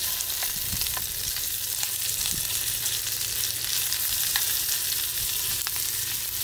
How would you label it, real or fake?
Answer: real